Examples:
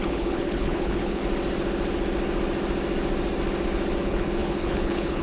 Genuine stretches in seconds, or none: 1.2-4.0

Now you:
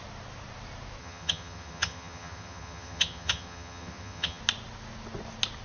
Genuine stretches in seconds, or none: 0.0-1.0; 4.4-5.6

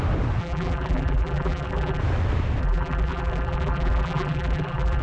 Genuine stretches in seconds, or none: 0.0-0.4; 2.0-2.6

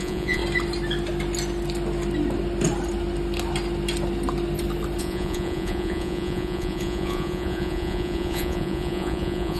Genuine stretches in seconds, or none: 0.4-5.0

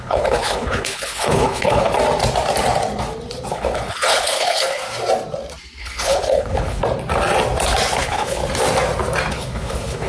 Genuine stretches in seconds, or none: 1.9-3.5; 4.8-5.8; 6.8-8.0; 8.4-9.3

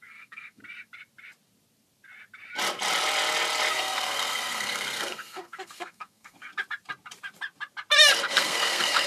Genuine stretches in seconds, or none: 0.6-3.7; 6.5-8.2